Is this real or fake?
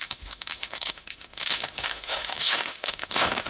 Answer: fake